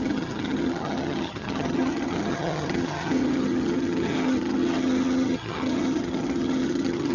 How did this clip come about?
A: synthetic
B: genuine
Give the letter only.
A